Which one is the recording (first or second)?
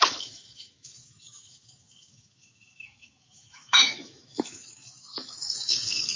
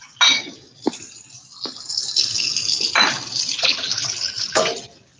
second